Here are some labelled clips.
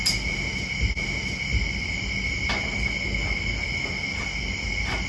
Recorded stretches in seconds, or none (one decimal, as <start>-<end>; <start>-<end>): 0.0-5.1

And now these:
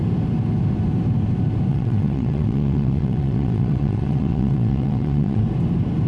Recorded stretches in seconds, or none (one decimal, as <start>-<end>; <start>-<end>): 0.0-1.7; 5.4-6.1

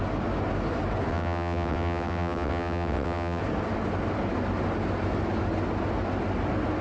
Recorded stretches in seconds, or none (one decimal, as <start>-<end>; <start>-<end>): 0.0-1.1; 3.4-6.8